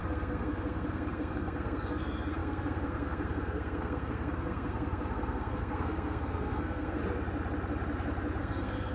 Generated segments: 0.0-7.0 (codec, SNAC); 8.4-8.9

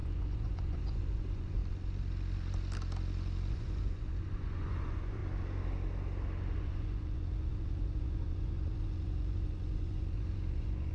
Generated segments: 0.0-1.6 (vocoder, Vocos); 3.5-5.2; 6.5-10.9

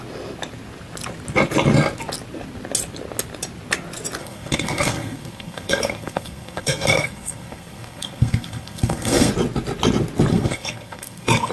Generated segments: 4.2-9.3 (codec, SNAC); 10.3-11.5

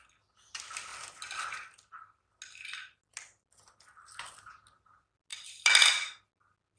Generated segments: none